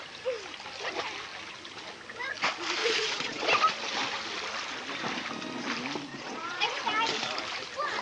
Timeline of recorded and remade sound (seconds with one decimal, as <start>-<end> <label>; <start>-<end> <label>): 0.0-2.8 recorded; 2.8-3.4 remade; 3.4-6.1 recorded; 6.1-6.8 remade; 6.8-8.0 recorded